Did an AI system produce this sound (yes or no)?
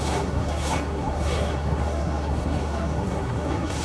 yes